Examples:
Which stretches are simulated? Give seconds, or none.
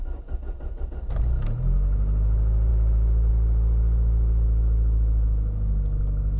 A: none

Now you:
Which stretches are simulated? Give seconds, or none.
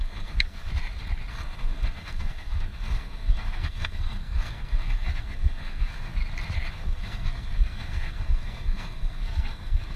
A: 0.0-0.7 (codec, SNAC); 1.3-6.2; 6.7-10.0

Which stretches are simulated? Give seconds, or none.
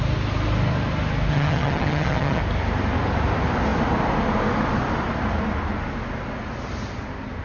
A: 1.3-2.4 (vocoder, HiFi-GAN)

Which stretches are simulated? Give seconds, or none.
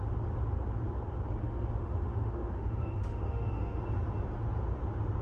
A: 1.4-3.8 (autoencoder, DAC-VAE)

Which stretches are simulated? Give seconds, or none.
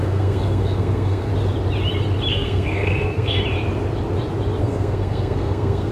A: 0.0-1.3 (codec, SNAC); 2.3-3.4; 4.6-5.9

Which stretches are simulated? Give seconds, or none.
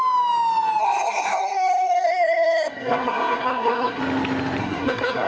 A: 0.8-4.0 (codec, SNAC); 4.6-5.3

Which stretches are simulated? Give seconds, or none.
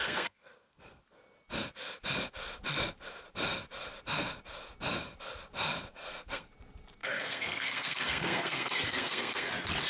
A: 0.0-1.0 (codec, SNAC); 5.9-6.5; 7.0-9.5